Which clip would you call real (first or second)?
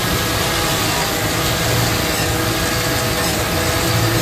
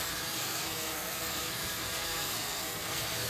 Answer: first